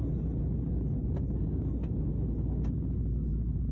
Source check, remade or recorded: recorded